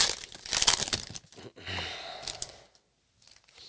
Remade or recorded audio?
recorded